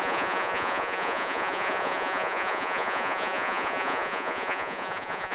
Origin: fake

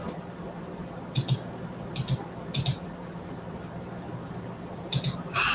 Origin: real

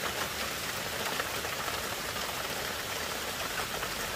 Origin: real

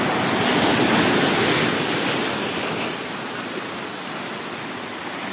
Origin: real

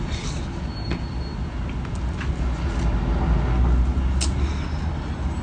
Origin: real